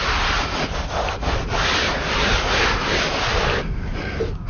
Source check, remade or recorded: recorded